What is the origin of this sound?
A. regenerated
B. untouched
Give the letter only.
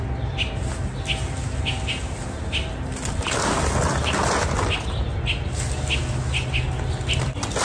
B